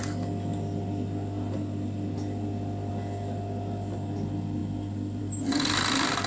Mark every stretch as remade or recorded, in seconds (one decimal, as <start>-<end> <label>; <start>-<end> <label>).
0.0-6.3 recorded